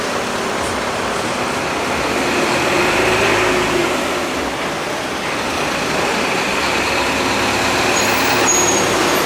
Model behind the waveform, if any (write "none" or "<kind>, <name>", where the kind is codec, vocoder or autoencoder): none